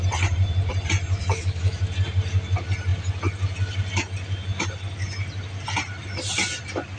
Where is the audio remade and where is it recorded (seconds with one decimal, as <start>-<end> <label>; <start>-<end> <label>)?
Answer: 0.0-1.2 recorded; 1.2-1.8 remade; 1.8-7.0 recorded